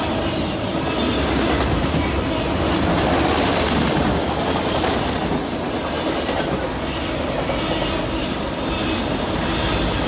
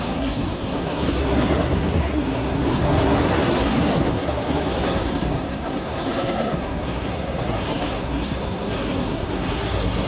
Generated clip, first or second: second